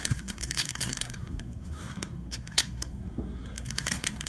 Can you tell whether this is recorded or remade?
remade